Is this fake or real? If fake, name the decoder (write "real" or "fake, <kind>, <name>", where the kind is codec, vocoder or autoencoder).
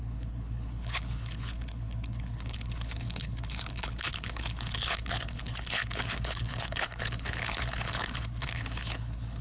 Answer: fake, codec, HILCodec